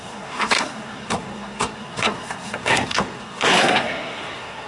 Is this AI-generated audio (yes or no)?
yes